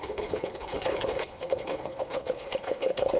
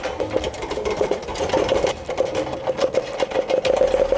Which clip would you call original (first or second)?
second